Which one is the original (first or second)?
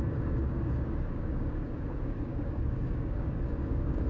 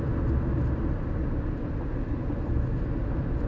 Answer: second